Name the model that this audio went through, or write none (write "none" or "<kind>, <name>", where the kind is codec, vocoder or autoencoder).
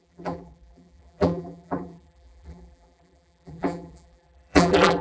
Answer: vocoder, BigVGAN v2